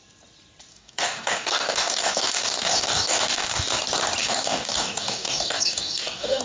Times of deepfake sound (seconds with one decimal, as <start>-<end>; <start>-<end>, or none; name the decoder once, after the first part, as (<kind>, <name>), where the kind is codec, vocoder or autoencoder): 0.7-3.8 (codec, DAC); 4.2-6.4